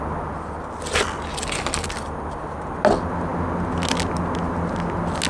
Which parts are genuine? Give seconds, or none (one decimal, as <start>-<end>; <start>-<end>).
0.0-5.3